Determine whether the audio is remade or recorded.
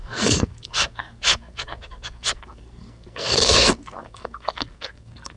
remade